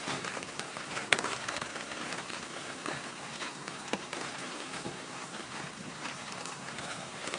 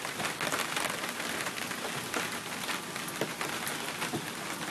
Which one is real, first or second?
second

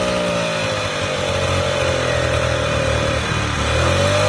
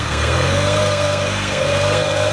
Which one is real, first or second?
first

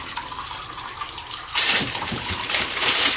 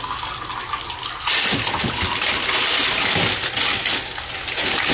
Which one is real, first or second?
second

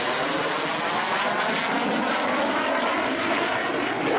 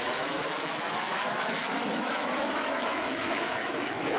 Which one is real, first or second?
first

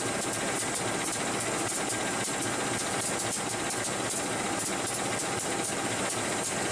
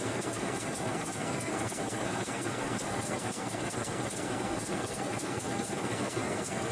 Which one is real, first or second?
first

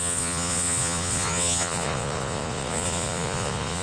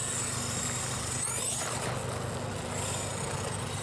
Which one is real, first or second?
second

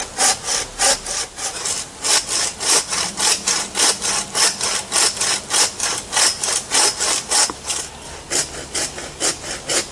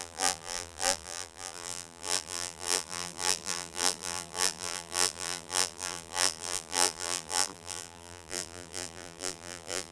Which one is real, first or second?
first